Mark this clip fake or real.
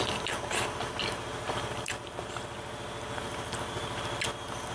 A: real